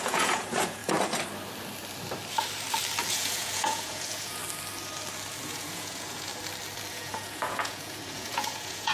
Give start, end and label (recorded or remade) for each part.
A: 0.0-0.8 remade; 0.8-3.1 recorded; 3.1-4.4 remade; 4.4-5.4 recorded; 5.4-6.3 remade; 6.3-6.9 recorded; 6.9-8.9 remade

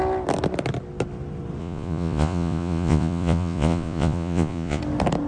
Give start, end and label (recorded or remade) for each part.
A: 0.0-1.6 recorded; 1.6-4.8 remade; 4.8-5.3 recorded

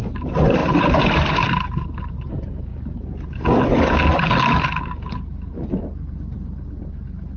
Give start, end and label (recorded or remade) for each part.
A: 0.0-2.7 remade; 2.7-7.4 recorded

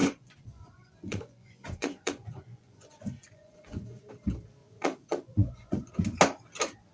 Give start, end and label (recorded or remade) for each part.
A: 0.0-4.1 remade; 4.1-4.6 recorded; 4.6-5.9 remade; 5.9-6.9 recorded

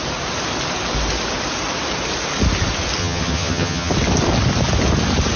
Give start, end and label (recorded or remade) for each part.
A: 0.0-3.0 recorded; 3.0-3.9 remade; 3.9-5.4 recorded